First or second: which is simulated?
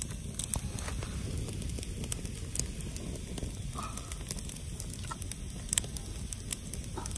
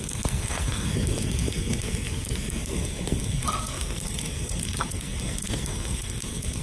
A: second